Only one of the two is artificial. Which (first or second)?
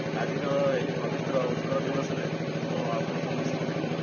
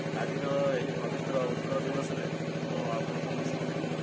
first